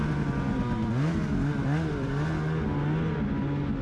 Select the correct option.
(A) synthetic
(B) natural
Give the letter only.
B